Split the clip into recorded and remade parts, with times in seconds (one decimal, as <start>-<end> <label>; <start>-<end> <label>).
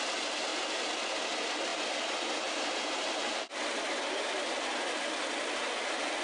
0.0-0.5 recorded; 0.5-1.2 remade; 1.2-1.7 recorded; 1.7-5.4 remade; 5.4-6.2 recorded